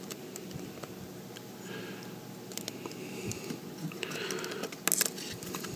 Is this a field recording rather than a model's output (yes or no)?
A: yes